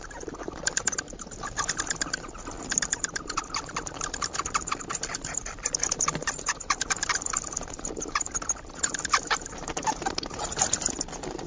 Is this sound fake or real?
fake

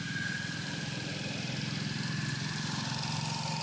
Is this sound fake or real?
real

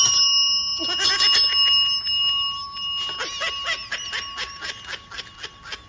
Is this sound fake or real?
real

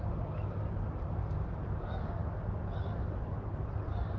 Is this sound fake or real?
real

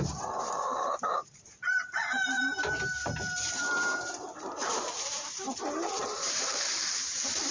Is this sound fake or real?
fake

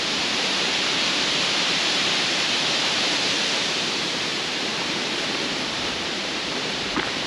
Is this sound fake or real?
fake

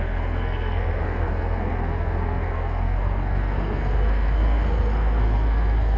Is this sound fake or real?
fake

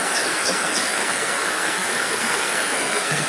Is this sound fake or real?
fake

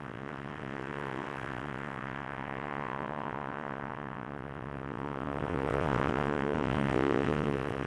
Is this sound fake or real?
fake